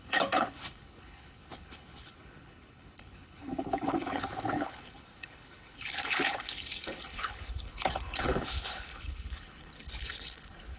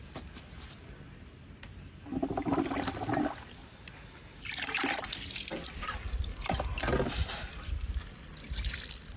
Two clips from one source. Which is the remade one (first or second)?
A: first